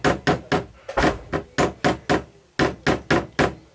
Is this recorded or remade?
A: recorded